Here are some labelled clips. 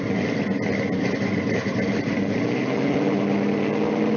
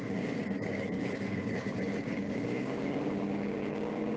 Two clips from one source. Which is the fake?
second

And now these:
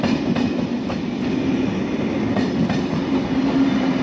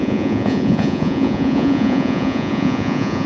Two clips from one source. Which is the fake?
second